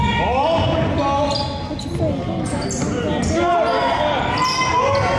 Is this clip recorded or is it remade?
recorded